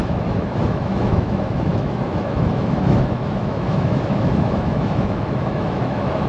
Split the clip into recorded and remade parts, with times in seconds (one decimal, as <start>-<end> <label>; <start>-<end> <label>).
0.0-6.3 remade